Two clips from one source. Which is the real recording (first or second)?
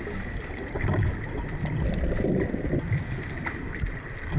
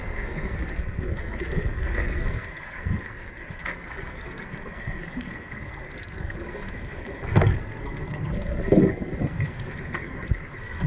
first